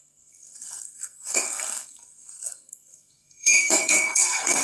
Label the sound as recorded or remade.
remade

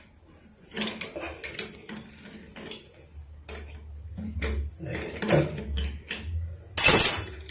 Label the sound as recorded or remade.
recorded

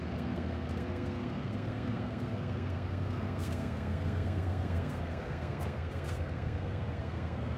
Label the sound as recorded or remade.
remade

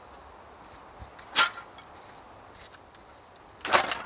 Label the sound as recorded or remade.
recorded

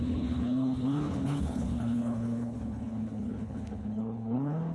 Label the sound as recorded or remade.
remade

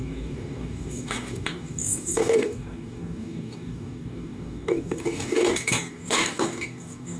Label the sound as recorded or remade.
remade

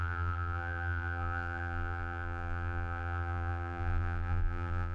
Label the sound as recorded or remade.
remade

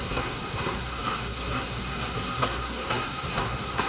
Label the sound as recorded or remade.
remade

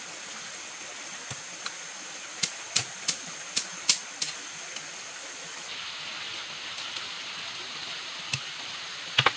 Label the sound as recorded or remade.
recorded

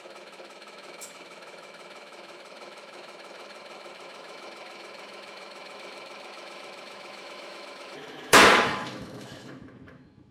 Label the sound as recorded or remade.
remade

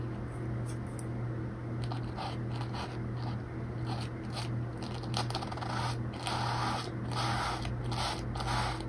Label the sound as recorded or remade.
recorded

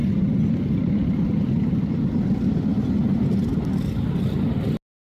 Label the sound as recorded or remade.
recorded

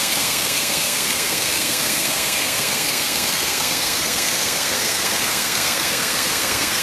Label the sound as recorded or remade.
remade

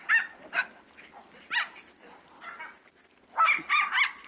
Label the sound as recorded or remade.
recorded